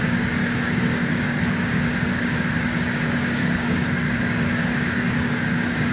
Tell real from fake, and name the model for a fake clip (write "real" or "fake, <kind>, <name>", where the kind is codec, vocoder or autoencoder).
fake, codec, DAC